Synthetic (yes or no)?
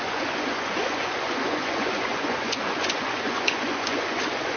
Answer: yes